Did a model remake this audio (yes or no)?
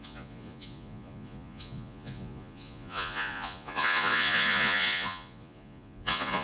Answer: yes